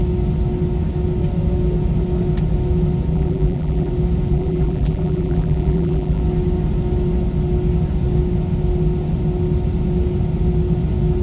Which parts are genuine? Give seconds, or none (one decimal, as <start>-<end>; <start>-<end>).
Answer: 0.0-3.1; 3.9-4.3; 6.2-11.2